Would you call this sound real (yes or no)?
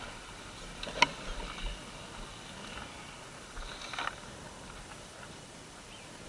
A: yes